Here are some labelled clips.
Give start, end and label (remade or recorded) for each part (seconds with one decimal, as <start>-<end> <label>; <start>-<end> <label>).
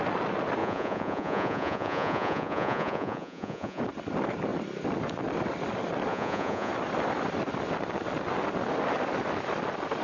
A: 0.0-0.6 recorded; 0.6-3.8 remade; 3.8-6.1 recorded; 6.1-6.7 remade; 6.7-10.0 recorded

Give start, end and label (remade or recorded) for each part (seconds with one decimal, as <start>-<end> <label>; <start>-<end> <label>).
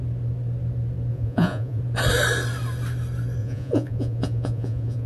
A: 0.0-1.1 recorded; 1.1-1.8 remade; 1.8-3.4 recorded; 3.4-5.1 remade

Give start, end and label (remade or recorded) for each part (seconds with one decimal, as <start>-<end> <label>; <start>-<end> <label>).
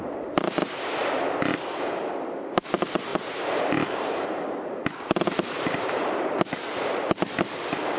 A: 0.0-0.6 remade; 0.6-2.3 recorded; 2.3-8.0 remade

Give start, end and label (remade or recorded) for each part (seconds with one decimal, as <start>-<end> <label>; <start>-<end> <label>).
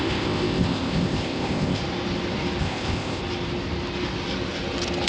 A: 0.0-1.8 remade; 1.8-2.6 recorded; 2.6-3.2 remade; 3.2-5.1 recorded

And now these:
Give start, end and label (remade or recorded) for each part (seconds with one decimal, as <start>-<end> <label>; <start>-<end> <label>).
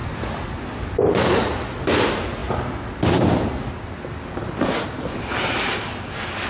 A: 0.0-1.4 remade; 1.4-6.5 recorded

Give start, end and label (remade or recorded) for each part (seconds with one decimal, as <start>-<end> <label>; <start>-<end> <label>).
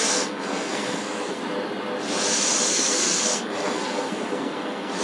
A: 0.0-1.4 remade; 1.4-2.7 recorded; 2.7-5.0 remade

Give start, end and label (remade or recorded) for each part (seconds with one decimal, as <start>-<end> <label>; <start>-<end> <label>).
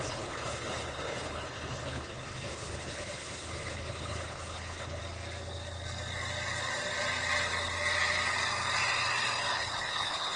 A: 0.0-5.0 remade; 5.0-9.5 recorded; 9.5-10.4 remade